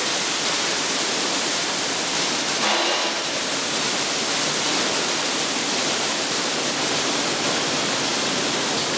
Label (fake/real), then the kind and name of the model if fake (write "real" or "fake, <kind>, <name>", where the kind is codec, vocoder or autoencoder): real